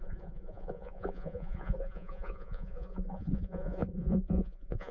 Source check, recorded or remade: remade